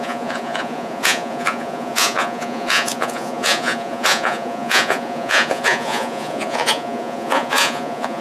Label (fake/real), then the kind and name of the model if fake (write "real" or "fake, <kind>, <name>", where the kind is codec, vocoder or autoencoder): fake, vocoder, Vocos